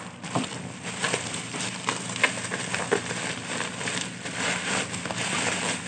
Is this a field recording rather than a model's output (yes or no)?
yes